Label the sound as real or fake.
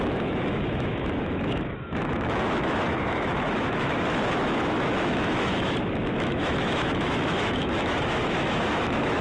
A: fake